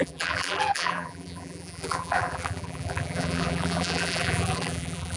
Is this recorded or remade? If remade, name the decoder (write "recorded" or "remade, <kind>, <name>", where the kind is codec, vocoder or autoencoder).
remade, vocoder, BigVGAN v2